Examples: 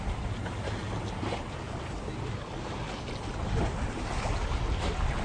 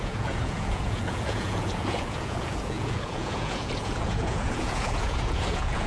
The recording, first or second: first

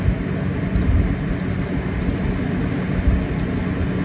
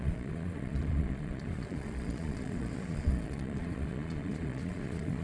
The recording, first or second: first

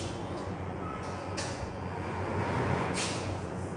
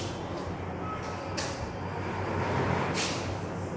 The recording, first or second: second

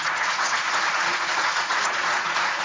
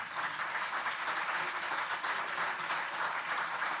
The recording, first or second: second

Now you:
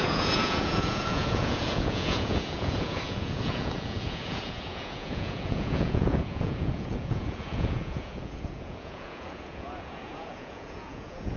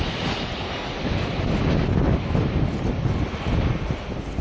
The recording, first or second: second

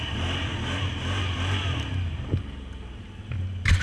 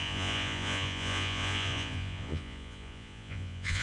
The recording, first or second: first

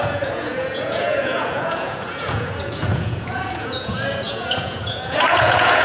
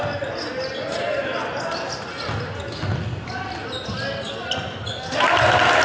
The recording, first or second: second